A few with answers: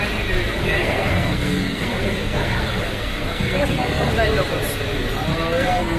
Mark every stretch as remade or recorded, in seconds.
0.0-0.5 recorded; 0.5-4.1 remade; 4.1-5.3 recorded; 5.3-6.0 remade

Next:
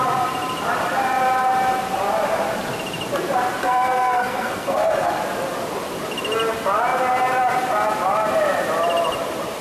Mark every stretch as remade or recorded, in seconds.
0.0-3.6 recorded; 3.6-5.2 remade; 5.2-9.6 recorded

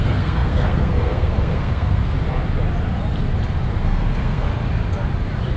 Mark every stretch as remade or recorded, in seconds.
0.0-2.0 remade; 2.0-3.8 recorded; 3.8-4.5 remade; 4.5-5.6 recorded